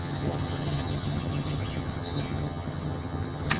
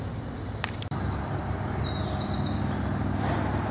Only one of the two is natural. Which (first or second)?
second